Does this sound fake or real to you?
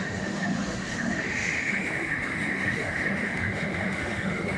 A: fake